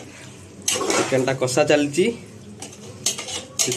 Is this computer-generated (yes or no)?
no